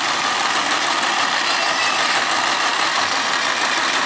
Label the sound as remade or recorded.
recorded